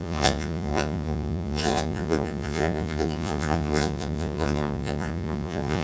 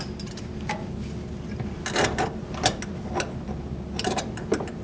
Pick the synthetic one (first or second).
first